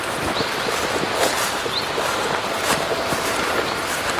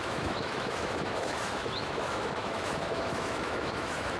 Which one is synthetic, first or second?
second